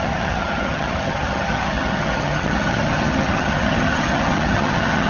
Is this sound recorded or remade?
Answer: remade